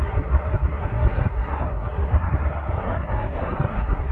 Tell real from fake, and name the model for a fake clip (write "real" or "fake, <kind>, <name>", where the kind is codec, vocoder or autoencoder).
fake, codec, SNAC